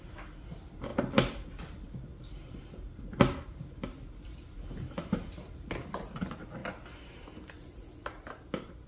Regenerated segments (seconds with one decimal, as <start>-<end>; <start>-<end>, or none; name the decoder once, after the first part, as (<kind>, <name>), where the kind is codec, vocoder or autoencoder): none